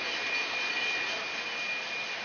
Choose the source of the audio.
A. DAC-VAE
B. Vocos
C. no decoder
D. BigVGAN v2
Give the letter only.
C